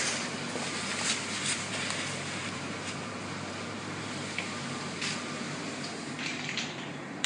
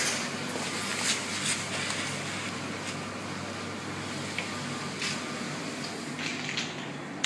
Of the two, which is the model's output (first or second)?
first